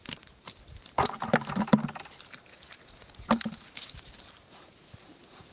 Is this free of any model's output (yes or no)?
no